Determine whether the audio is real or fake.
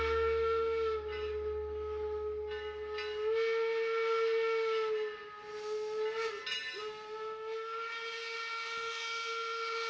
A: real